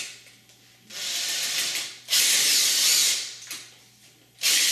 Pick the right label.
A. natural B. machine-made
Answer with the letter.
A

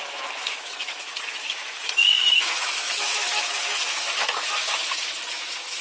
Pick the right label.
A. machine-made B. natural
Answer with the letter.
A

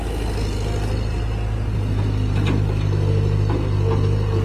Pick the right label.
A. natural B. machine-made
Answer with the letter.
A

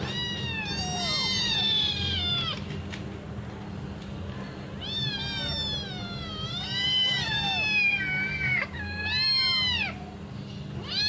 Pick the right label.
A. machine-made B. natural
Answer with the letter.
B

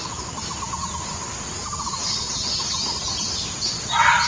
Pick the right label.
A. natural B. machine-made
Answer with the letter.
A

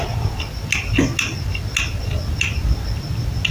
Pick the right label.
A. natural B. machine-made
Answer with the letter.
A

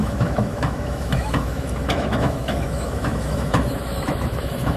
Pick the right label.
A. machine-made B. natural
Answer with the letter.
A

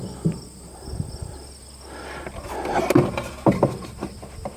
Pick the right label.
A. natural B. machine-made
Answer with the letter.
A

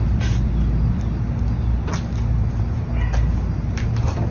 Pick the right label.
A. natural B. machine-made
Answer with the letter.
A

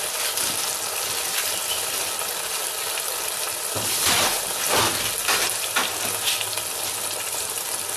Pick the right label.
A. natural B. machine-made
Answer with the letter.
A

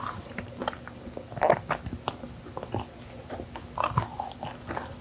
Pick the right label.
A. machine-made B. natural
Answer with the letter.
B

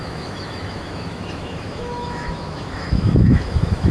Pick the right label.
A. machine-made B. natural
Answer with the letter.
A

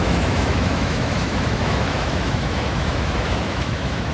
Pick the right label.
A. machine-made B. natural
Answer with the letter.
A